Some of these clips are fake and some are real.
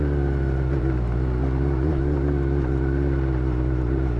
real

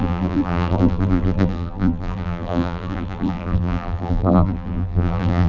fake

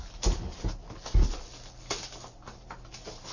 real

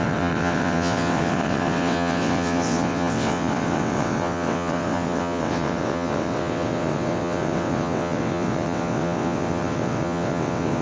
fake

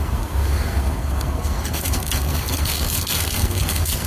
fake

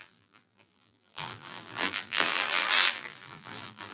fake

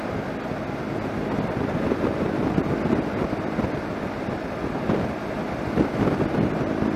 real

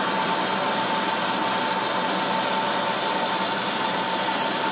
real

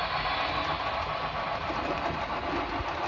real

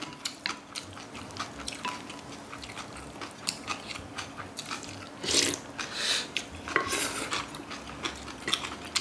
real